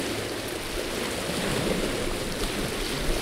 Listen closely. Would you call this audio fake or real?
real